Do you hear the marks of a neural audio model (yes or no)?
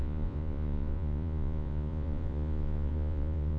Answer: yes